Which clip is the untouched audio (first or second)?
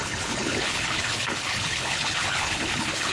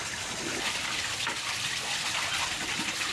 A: second